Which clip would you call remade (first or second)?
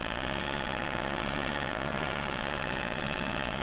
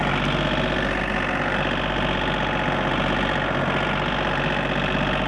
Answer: first